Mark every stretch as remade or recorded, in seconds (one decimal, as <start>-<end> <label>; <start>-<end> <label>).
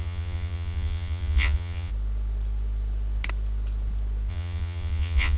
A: 0.0-1.9 remade; 1.9-4.3 recorded; 4.3-5.4 remade